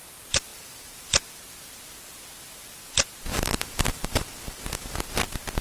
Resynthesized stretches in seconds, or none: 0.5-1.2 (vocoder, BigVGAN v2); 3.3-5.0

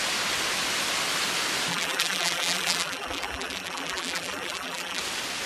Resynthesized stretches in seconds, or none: 1.7-5.0 (vocoder, BigVGAN v2)

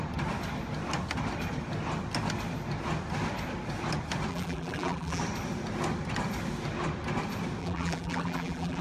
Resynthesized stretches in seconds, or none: 4.3-5.2 (vocoder, BigVGAN v2); 7.6-8.8

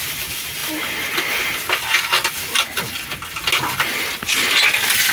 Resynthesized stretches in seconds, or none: none

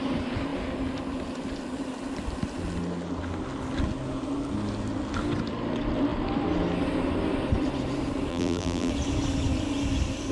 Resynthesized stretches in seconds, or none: 8.3-8.9 (vocoder, BigVGAN v2)

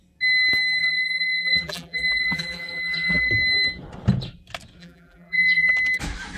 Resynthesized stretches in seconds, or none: 0.8-3.3 (vocoder, BigVGAN v2); 4.8-5.7

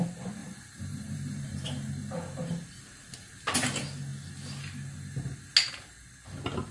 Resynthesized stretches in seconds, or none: 0.4-1.9 (vocoder, BigVGAN v2)